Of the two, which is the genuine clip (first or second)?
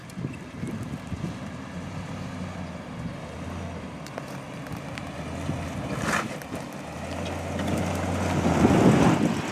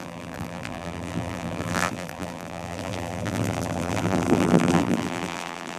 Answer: first